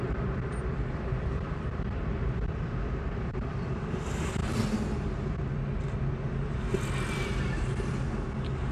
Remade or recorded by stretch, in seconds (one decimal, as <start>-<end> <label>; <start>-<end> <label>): 0.0-8.7 recorded